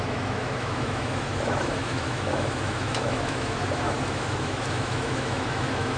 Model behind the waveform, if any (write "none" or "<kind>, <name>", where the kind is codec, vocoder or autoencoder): autoencoder, DAC-VAE